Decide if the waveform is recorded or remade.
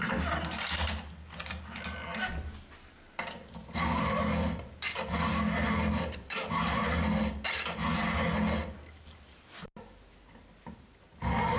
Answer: recorded